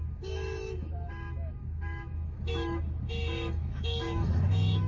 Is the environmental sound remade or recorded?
remade